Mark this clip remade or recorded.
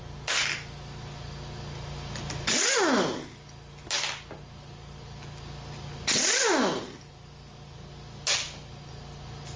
recorded